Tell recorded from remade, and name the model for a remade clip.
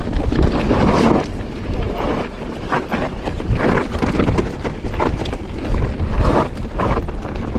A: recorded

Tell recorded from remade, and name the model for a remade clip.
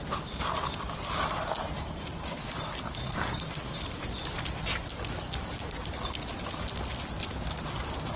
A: recorded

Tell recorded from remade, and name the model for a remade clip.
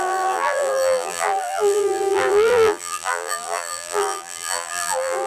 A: remade, vocoder, BigVGAN v2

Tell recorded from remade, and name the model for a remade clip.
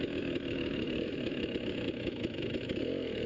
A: remade, autoencoder, DAC-VAE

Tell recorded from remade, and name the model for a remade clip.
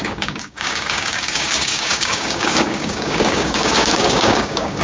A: remade, codec, DAC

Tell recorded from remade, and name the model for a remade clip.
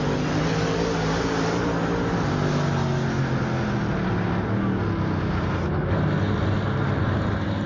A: recorded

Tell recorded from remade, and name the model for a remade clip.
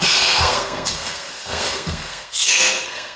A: remade, codec, SNAC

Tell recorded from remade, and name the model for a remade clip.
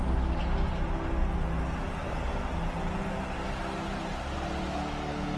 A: recorded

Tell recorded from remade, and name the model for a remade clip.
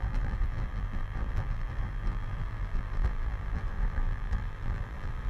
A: remade, vocoder, BigVGAN v2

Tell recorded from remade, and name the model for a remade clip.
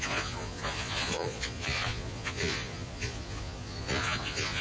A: remade, vocoder, Vocos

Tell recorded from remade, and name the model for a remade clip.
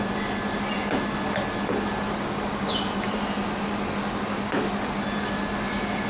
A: recorded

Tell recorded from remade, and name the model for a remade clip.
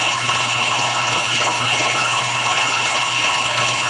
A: remade, codec, HILCodec